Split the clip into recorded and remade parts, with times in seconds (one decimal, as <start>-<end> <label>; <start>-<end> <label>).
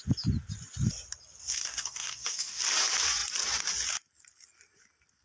0.0-1.5 recorded; 1.5-2.6 remade; 2.6-5.2 recorded